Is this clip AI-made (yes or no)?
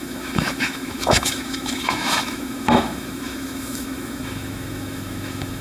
yes